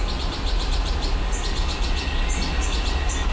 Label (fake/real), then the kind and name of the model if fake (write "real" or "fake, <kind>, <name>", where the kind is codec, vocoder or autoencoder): real